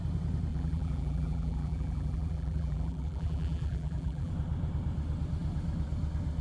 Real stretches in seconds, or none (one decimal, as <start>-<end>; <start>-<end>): 0.0-0.5; 4.3-6.4